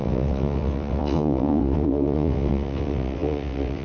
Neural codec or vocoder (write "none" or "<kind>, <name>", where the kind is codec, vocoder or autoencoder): vocoder, WaveNeXt